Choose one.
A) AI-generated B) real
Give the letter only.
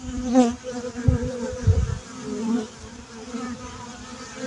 A